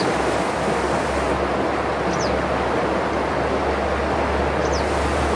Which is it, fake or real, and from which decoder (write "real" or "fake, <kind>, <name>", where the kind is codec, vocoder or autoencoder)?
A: real